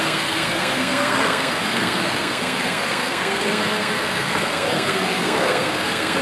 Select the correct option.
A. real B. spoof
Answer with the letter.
B